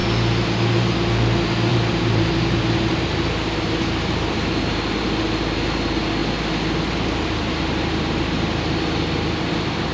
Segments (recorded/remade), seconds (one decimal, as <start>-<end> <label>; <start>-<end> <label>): 0.0-1.7 recorded; 1.7-4.5 remade; 4.5-9.9 recorded

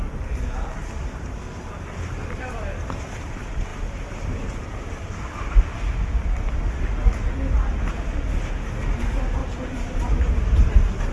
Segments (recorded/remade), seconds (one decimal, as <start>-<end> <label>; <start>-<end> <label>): 0.0-9.4 recorded; 9.4-11.1 remade

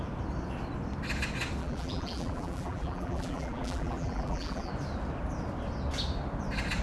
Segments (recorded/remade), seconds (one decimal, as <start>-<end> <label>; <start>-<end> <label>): 0.0-1.6 recorded; 1.6-4.7 remade; 4.7-6.8 recorded

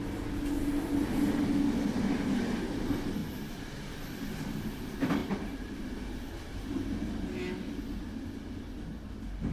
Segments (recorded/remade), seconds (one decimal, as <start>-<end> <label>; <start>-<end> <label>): 0.0-1.9 recorded; 1.9-2.4 remade; 2.4-3.2 recorded; 3.2-4.2 remade; 4.2-5.2 recorded; 5.2-5.8 remade; 5.8-9.5 recorded

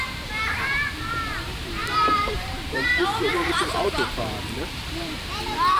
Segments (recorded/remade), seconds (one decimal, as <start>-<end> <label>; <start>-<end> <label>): 0.0-5.8 remade

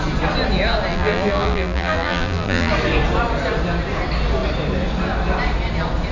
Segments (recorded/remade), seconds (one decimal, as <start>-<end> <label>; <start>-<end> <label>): 0.0-0.9 recorded; 0.9-2.7 remade; 2.7-6.1 recorded

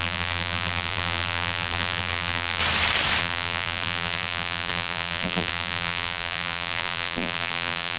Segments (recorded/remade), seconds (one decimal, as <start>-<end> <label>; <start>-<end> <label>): 0.0-2.6 remade; 2.6-3.2 recorded; 3.2-8.0 remade